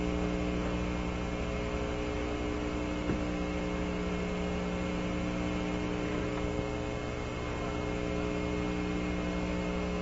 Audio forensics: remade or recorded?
recorded